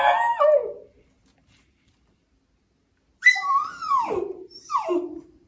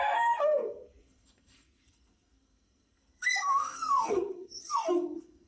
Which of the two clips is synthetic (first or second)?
second